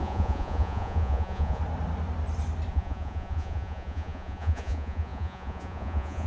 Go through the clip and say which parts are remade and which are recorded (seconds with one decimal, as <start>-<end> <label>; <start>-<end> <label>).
0.0-1.6 remade; 1.6-2.7 recorded; 2.7-6.3 remade